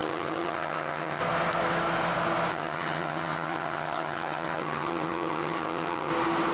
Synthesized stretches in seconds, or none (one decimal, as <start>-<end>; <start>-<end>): 0.0-1.2; 2.5-6.1